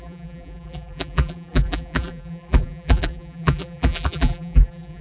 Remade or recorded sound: remade